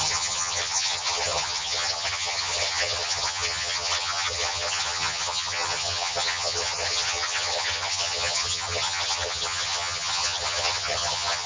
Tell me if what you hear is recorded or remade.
remade